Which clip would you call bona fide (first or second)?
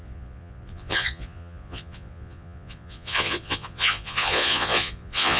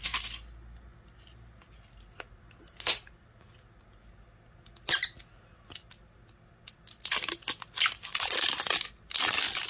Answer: second